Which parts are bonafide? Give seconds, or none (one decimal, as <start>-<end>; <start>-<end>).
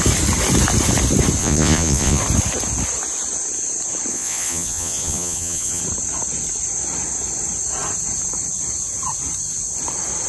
0.0-1.4; 2.2-4.1; 5.8-10.3